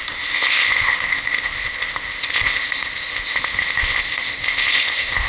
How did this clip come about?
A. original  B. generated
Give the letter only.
B